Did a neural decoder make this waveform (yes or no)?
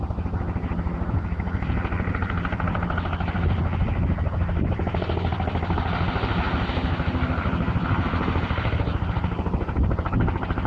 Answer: no